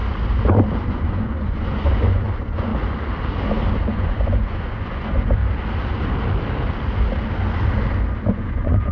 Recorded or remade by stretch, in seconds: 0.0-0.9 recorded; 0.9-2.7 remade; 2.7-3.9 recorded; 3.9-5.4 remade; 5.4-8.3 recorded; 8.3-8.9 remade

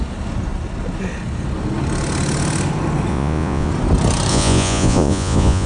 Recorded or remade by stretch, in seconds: 0.0-3.1 recorded; 3.1-3.7 remade; 3.7-4.3 recorded; 4.3-5.7 remade

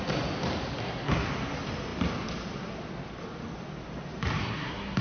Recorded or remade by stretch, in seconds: 0.0-0.8 recorded; 0.8-1.3 remade; 1.3-4.4 recorded; 4.4-5.0 remade

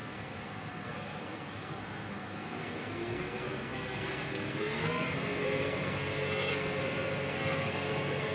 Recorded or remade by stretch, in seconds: 0.0-8.3 remade

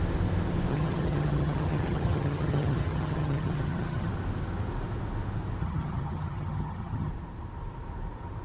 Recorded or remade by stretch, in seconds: 0.0-0.7 recorded; 0.7-4.1 remade; 4.1-5.6 recorded; 5.6-7.1 remade; 7.1-8.4 recorded

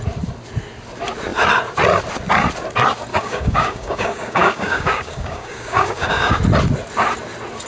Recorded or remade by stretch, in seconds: 0.0-3.1 recorded; 3.1-6.4 remade; 6.4-7.7 recorded

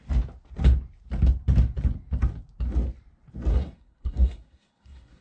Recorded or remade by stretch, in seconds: 0.0-3.5 recorded; 3.5-5.2 remade